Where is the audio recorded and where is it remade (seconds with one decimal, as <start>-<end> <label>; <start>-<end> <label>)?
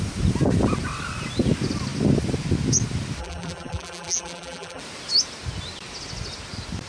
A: 0.0-3.2 recorded; 3.2-4.8 remade; 4.8-6.9 recorded